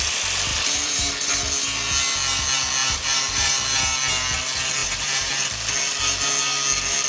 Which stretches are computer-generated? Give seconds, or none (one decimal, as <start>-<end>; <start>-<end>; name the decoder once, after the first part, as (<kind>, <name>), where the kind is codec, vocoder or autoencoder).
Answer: 0.5-1.1 (vocoder, BigVGAN v2); 2.8-3.5; 4.8-5.4